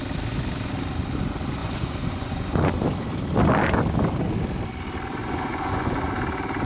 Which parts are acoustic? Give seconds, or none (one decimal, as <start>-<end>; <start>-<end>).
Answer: 0.0-1.6; 2.7-5.2; 6.1-6.7